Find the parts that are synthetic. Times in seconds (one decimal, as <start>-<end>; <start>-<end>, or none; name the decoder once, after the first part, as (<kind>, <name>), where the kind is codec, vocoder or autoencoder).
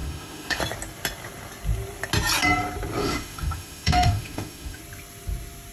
0.0-0.6 (autoencoder, DAC-VAE); 3.0-4.8